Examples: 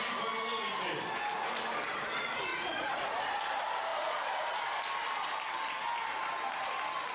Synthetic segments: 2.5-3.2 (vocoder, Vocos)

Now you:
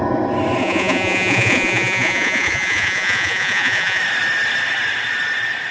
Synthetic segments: 0.6-4.0 (vocoder, Vocos)